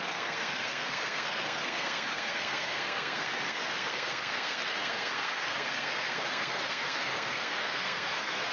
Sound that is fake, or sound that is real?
fake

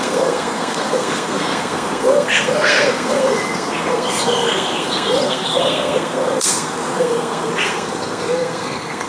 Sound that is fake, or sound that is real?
fake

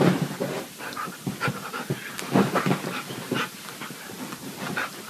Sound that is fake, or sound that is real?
real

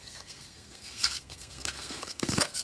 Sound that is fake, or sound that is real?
fake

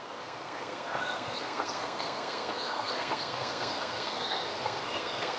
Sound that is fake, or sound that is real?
fake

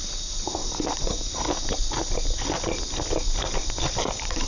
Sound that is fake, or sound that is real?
real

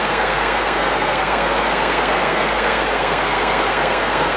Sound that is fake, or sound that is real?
fake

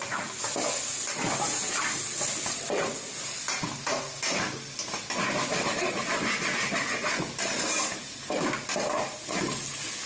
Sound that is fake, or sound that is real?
real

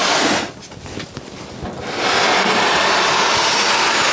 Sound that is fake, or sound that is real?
real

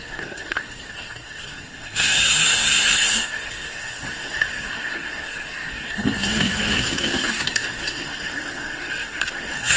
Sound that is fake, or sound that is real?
fake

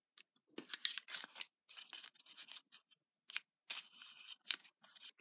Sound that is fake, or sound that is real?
real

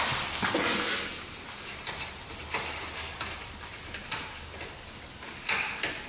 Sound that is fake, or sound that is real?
real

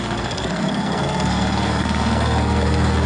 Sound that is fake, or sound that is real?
fake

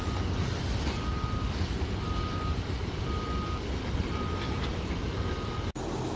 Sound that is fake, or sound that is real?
real